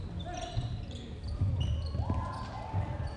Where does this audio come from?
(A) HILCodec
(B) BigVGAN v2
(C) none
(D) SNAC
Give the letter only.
C